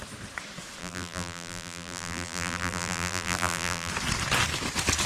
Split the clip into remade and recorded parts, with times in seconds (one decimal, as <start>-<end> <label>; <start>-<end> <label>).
0.0-0.8 recorded; 0.8-3.9 remade; 3.9-5.1 recorded